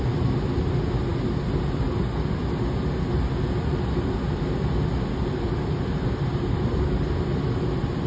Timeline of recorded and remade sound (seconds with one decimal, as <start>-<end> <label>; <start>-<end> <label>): 0.0-8.1 recorded